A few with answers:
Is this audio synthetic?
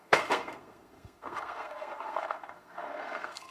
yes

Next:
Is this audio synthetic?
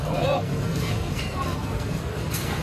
yes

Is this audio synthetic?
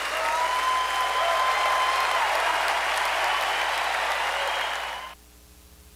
no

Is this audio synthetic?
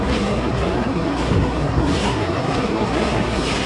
yes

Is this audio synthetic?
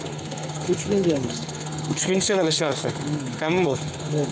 yes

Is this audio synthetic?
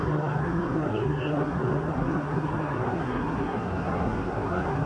yes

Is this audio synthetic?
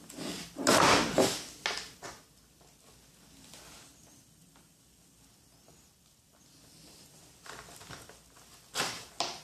no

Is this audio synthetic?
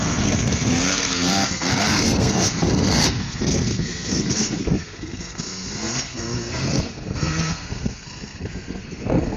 yes